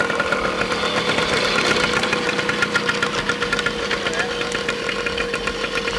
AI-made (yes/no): no